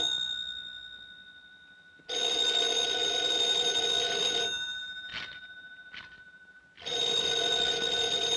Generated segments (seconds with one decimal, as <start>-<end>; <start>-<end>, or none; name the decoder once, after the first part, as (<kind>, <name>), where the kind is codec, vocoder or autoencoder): none